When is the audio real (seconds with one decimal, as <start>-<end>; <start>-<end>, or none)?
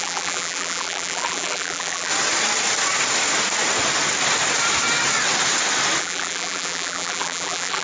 2.1-6.0